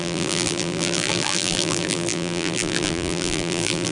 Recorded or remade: remade